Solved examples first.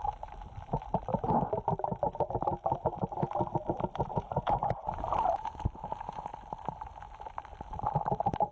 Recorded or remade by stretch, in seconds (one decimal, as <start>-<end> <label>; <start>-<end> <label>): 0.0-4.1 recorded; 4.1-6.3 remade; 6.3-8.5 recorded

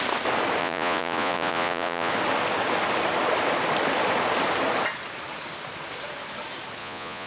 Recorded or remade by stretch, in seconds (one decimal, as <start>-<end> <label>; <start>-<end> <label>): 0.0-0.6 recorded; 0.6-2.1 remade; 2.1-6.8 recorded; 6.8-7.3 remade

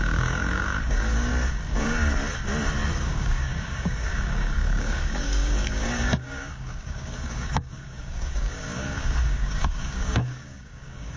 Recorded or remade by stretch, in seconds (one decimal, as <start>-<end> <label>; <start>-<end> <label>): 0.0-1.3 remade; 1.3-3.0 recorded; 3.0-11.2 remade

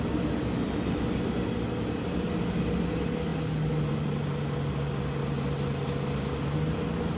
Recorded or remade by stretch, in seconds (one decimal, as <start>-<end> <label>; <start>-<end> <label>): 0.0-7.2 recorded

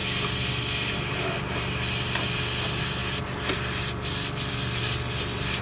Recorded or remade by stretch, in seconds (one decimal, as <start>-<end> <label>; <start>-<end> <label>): 0.0-5.6 recorded